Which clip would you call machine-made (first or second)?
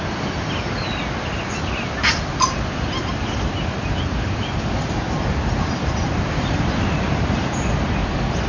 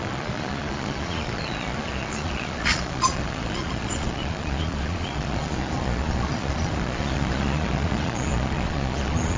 second